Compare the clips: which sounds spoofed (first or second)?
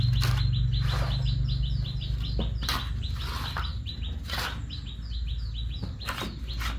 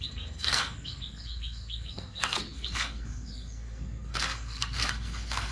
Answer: second